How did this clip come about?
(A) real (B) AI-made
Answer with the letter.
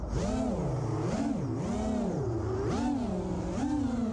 A